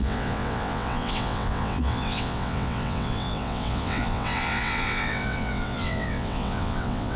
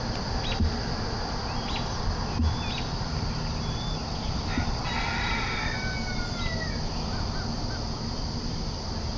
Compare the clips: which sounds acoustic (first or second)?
second